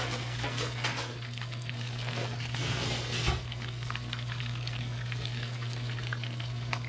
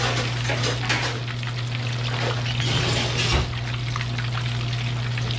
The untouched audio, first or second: second